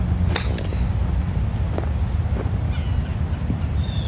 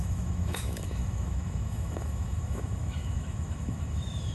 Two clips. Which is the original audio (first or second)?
first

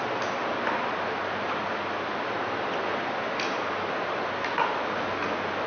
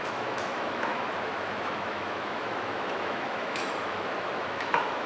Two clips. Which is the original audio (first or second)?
first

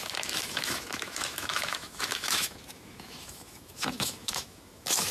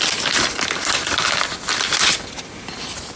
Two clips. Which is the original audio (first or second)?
second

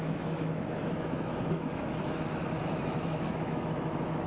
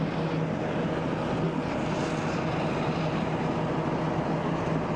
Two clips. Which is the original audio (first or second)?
second